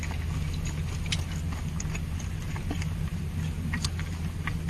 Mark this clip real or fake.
real